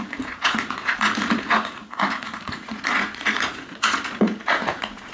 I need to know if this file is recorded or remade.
remade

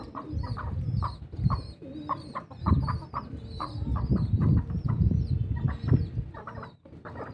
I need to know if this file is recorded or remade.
recorded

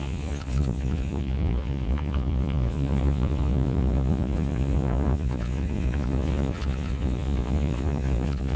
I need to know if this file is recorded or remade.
remade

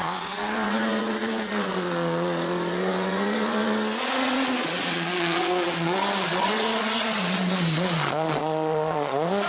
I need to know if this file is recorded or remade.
remade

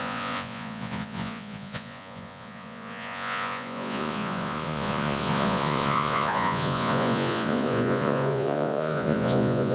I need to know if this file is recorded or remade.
remade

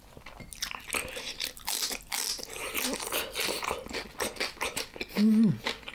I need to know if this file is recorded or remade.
recorded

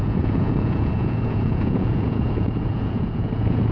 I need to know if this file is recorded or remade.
remade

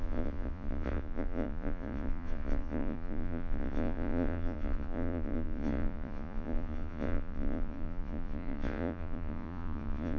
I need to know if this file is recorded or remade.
remade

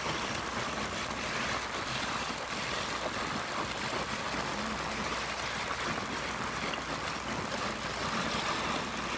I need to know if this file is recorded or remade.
recorded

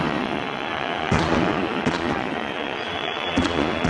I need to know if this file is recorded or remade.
remade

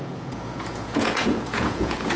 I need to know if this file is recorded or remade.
remade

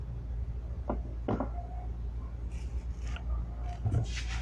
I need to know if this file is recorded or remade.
recorded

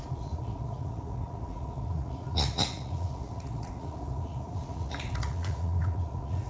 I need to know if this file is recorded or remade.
remade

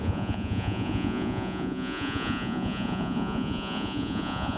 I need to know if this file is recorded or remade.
remade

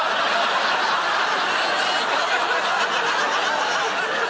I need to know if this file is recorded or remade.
recorded